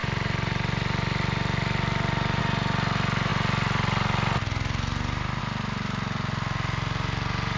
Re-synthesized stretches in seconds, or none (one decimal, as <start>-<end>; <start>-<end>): 0.0-2.4